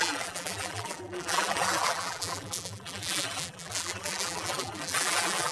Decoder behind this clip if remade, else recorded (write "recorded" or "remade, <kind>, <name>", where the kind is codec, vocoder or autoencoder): remade, vocoder, BigVGAN v2